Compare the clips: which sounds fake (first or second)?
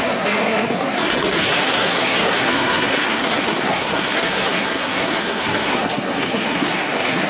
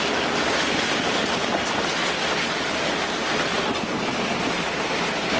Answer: first